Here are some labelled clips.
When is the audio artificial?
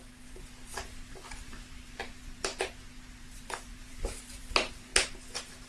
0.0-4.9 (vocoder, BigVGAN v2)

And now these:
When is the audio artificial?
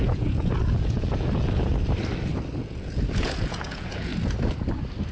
0.0-1.7 (vocoder, Vocos); 2.6-4.1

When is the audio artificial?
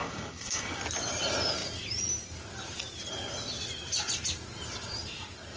0.0-0.8 (codec, DAC)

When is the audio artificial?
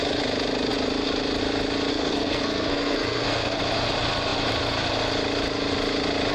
1.9-3.6 (codec, SNAC)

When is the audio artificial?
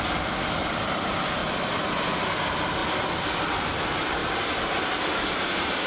0.0-4.2 (vocoder, BigVGAN v2); 4.9-5.9